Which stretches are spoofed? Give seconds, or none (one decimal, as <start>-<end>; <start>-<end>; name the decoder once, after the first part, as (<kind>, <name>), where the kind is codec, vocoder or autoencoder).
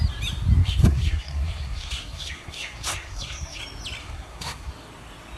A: 0.6-3.6 (codec, SNAC); 4.0-4.7